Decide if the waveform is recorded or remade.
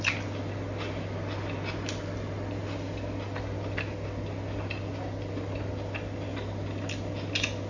recorded